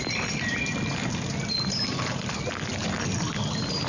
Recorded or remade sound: recorded